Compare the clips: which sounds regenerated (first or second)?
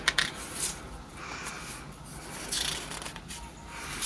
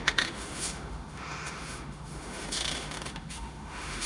second